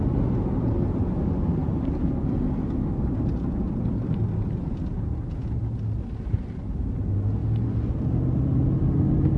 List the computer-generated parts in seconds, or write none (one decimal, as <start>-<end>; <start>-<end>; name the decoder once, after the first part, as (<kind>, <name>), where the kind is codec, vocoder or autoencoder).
none